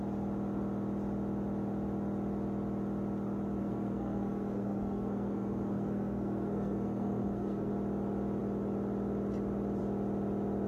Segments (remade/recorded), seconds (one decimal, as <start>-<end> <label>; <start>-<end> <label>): 0.0-3.6 recorded; 3.6-7.7 remade; 7.7-10.7 recorded